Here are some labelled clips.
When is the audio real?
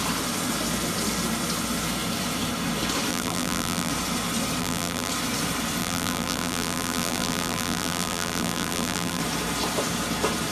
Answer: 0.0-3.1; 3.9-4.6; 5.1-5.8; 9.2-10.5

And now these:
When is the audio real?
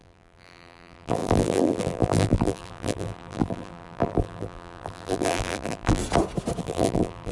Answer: 6.0-6.6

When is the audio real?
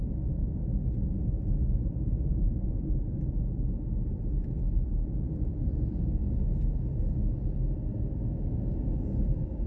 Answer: 6.2-8.1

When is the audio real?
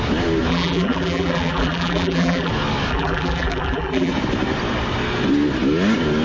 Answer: 0.0-0.5; 2.5-2.9; 4.1-6.2